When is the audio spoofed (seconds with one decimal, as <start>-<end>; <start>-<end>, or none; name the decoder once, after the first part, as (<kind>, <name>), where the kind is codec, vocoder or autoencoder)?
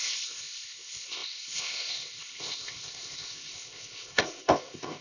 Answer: 0.0-5.0 (codec, ZipCodec)